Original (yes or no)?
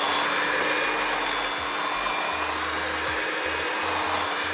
yes